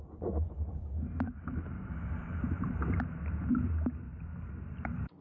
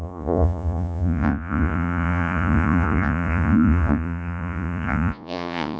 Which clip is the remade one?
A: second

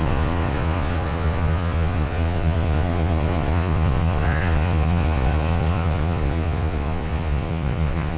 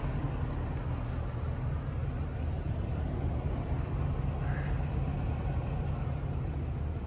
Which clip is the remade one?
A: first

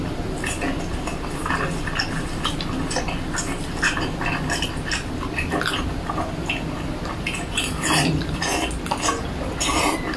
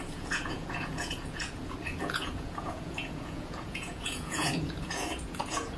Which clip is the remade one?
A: second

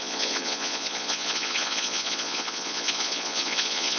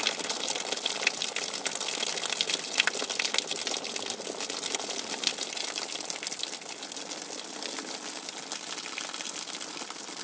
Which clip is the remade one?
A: first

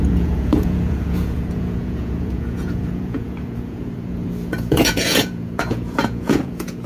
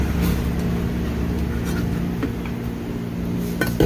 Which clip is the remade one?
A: first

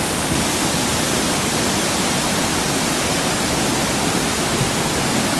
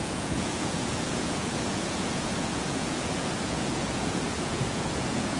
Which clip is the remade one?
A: second